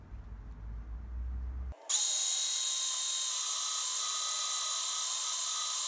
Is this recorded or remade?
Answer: recorded